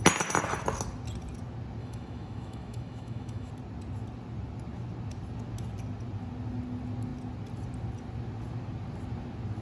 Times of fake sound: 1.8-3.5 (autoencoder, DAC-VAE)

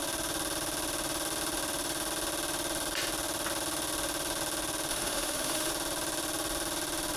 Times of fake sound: 4.9-5.7 (autoencoder, DAC-VAE)

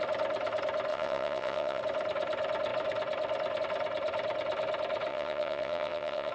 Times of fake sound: 0.9-1.8 (vocoder, WaveNeXt); 5.1-6.3

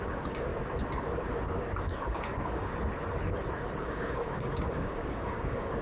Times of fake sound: 0.0-0.5 (codec, DAC); 1.8-2.7; 3.8-5.8

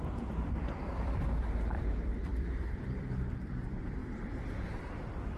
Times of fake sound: 0.0-4.0 (vocoder, BigVGAN v2); 4.8-5.4

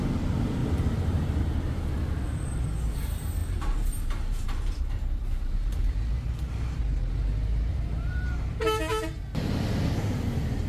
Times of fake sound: 0.6-1.4 (vocoder, BigVGAN v2); 3.4-6.8; 7.7-8.5

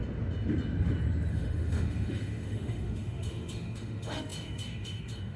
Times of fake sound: 1.3-5.4 (autoencoder, DAC-VAE)

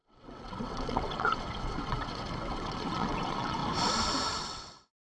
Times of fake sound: 0.0-3.6 (vocoder, WaveNeXt); 4.4-5.0